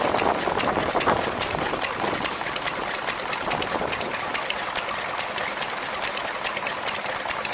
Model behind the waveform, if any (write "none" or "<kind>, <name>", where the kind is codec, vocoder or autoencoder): none